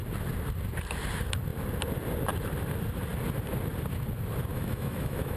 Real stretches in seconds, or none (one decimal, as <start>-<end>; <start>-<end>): 0.0-4.5